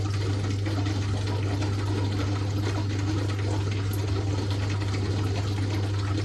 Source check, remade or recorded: recorded